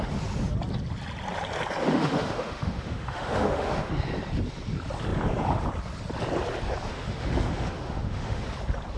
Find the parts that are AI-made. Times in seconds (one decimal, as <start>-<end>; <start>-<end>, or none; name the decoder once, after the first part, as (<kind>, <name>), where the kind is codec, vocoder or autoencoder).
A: 1.8-3.9 (autoencoder, DAC-VAE); 6.9-8.4